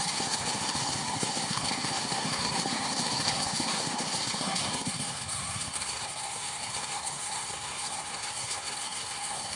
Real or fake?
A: fake